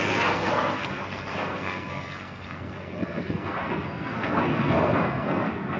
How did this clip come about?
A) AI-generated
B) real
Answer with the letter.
A